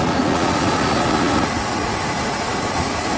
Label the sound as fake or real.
fake